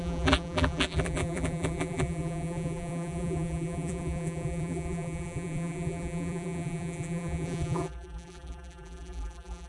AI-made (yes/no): yes